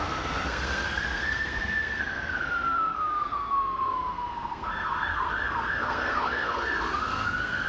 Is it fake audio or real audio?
fake